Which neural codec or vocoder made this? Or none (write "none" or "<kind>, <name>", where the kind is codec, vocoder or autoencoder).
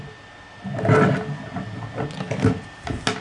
none